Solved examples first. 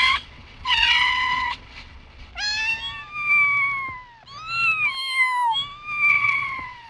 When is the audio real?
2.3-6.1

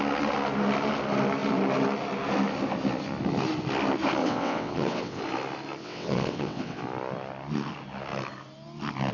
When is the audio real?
0.0-4.2; 5.2-5.8; 6.8-9.1

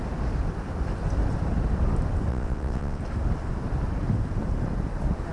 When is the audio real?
0.0-2.3; 3.0-5.3

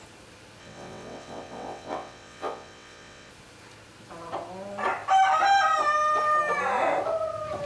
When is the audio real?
0.0-0.6; 3.3-7.7